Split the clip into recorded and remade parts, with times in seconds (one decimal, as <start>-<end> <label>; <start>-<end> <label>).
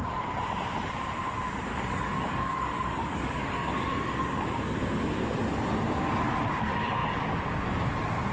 0.0-1.7 recorded; 1.7-4.8 remade; 4.8-8.3 recorded